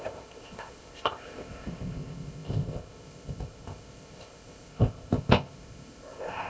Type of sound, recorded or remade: remade